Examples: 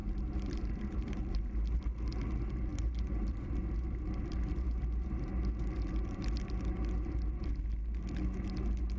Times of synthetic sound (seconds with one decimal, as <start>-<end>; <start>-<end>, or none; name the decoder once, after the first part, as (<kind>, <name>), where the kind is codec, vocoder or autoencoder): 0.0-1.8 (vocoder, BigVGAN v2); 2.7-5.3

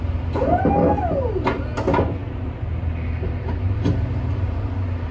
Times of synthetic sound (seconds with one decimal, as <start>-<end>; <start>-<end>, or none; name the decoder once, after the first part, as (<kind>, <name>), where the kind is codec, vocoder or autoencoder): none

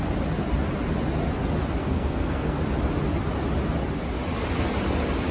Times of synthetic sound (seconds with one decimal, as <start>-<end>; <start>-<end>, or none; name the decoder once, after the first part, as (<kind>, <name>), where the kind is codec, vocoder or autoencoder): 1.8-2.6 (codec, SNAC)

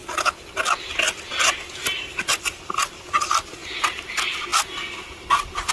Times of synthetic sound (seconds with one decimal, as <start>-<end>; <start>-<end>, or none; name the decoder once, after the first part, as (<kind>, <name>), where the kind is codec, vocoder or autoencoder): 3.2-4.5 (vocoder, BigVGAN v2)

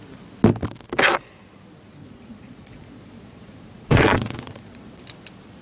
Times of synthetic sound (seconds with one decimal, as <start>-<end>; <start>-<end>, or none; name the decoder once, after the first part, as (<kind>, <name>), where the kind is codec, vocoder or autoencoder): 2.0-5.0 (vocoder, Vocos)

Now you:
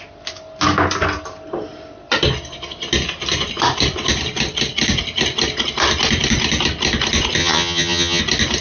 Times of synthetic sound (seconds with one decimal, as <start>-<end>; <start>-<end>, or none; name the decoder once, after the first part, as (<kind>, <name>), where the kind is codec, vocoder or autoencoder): 7.4-8.2 (vocoder, HiFi-GAN)

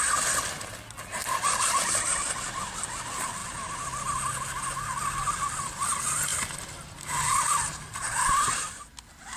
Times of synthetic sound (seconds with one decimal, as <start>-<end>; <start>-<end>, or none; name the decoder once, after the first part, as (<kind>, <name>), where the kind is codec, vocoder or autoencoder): 1.2-1.8 (vocoder, BigVGAN v2); 3.4-4.7

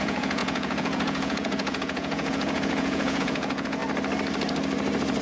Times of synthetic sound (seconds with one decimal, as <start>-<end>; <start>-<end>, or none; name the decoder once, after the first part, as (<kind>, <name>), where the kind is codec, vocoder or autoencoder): 0.0-3.8 (vocoder, Vocos)